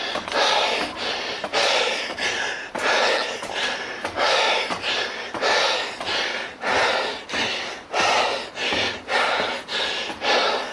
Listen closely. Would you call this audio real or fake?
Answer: real